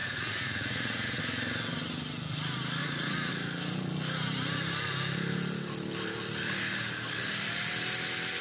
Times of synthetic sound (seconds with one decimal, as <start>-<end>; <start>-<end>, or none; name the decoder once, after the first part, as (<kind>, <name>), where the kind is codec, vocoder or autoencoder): 0.0-1.2 (vocoder, Vocos); 2.8-3.3